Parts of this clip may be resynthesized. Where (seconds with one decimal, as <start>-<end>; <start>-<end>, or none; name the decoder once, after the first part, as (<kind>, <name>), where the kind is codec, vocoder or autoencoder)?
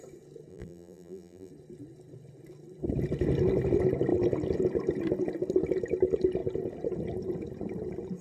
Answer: 0.5-1.5 (vocoder, BigVGAN v2)